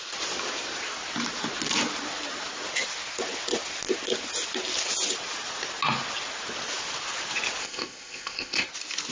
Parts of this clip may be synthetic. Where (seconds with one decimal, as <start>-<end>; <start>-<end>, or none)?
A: 7.6-8.6